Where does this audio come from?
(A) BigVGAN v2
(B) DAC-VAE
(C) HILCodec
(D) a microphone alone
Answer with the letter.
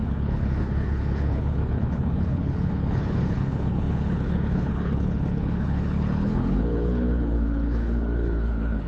C